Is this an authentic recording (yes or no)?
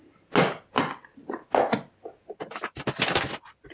yes